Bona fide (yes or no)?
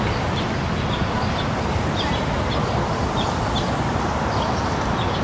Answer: yes